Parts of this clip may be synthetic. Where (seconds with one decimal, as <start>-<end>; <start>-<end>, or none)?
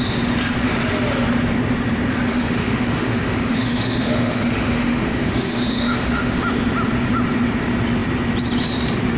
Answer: 2.3-6.3